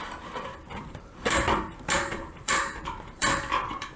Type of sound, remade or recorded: remade